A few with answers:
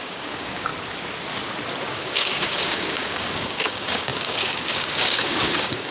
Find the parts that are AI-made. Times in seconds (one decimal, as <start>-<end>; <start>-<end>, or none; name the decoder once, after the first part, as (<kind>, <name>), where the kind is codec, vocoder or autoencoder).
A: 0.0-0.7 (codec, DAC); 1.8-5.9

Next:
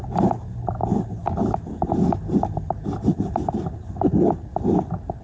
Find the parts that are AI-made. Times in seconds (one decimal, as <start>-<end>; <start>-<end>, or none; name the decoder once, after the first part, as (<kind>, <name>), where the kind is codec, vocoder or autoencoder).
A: none

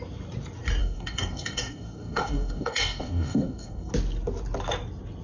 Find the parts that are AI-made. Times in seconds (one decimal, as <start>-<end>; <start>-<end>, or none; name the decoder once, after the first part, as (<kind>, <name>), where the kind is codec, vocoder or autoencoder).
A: 0.8-3.9 (codec, DAC)

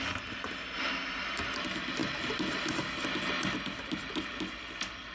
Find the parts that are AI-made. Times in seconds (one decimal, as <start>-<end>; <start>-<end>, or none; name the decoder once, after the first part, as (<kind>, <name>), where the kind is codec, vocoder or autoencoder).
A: none

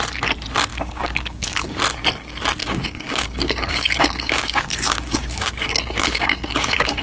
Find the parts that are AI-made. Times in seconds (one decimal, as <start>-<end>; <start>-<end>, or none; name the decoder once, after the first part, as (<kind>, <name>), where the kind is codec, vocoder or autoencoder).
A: 0.7-1.8 (codec, DAC); 2.6-7.0